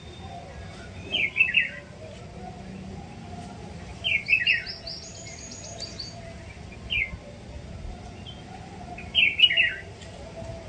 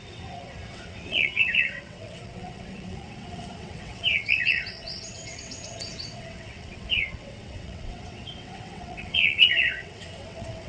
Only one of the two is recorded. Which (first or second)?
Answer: first